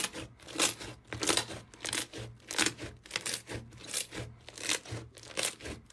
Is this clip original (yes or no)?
yes